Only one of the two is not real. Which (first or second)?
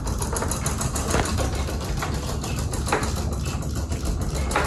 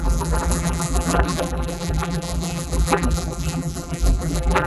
second